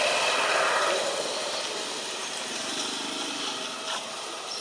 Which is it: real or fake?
real